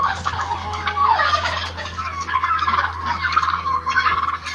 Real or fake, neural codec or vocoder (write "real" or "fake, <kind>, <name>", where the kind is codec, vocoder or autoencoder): fake, codec, DAC